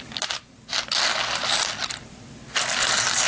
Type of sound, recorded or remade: recorded